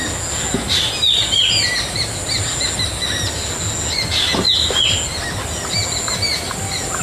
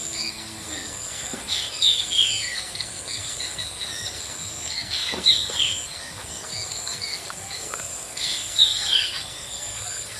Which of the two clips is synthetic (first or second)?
second